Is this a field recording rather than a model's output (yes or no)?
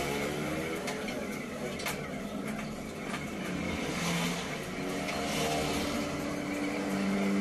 yes